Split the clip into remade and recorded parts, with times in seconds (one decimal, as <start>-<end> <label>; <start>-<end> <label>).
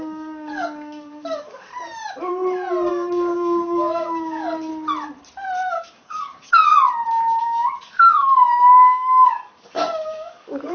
0.0-1.7 remade; 1.7-2.9 recorded; 2.9-4.7 remade; 4.7-5.7 recorded; 5.7-6.7 remade; 6.7-7.4 recorded; 7.4-10.7 remade